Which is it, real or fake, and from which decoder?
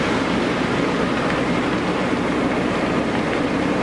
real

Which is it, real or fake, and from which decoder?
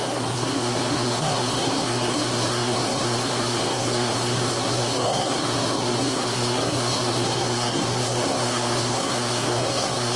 fake, codec, SNAC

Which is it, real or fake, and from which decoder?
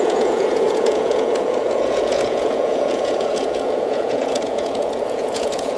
fake, vocoder, Vocos